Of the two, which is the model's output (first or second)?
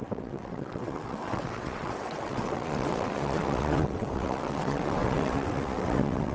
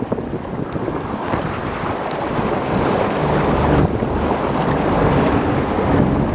first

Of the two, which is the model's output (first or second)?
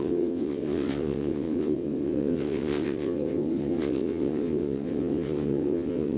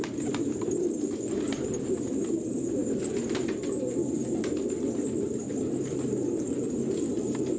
first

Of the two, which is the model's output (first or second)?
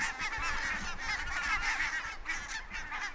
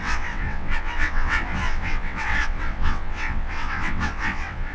second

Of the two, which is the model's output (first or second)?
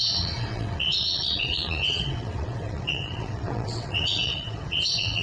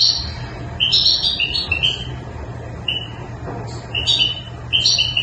first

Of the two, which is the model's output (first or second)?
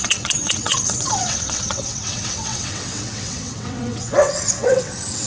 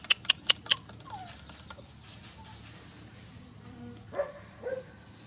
first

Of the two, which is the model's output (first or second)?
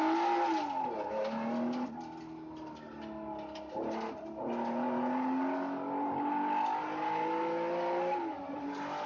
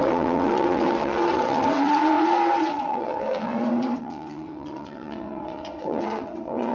second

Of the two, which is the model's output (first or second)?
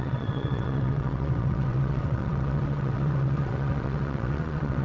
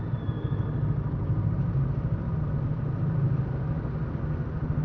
first